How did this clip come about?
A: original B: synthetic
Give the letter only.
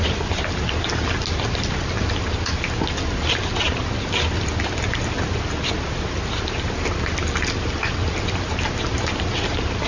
A